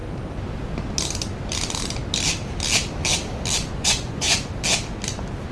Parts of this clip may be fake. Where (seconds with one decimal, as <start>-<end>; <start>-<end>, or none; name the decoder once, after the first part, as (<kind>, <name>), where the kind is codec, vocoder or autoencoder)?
3.6-4.5 (vocoder, Vocos)